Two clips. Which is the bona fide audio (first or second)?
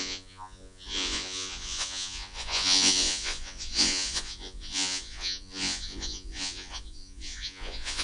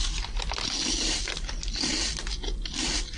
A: second